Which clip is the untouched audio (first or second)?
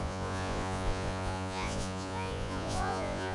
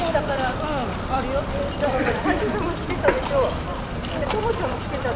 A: second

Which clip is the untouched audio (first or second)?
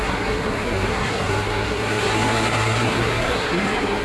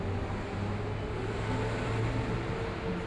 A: second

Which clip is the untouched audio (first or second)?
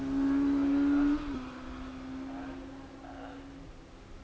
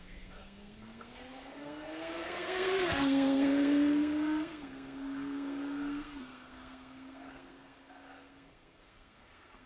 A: first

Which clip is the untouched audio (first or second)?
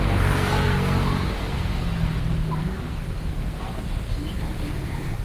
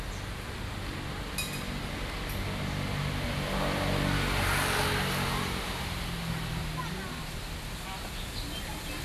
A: second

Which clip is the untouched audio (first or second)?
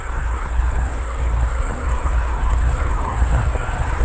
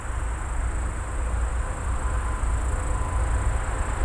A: second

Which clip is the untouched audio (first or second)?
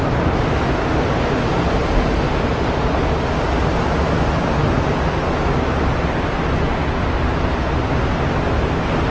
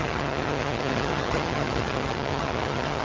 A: first